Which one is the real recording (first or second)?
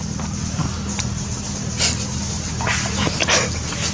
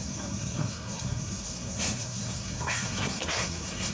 first